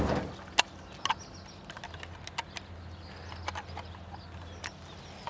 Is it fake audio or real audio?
real